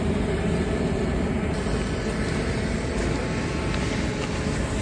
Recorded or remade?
recorded